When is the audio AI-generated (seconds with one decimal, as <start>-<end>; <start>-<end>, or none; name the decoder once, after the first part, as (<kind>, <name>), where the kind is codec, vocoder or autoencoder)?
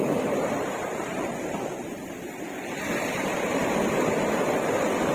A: 0.0-3.6 (vocoder, BigVGAN v2)